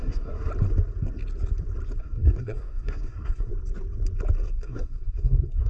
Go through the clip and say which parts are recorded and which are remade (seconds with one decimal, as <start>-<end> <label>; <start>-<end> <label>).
0.0-0.5 remade; 0.5-2.0 recorded; 2.0-3.5 remade; 3.5-4.5 recorded; 4.5-5.7 remade